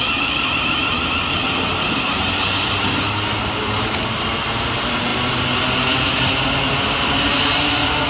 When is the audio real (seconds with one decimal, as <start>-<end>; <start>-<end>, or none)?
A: 0.0-8.1

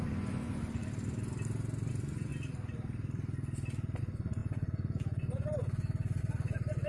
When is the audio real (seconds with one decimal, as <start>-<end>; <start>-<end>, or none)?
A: 0.8-1.9; 2.3-4.0